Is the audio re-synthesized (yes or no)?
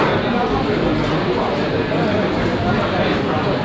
no